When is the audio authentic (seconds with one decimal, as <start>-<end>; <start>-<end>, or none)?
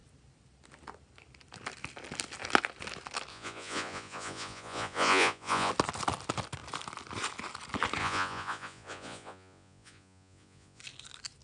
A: 0.0-3.3; 5.7-8.0; 10.8-11.4